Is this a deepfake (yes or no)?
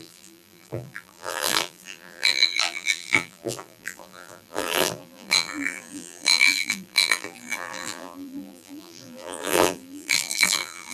yes